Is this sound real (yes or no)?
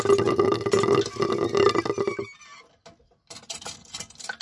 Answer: yes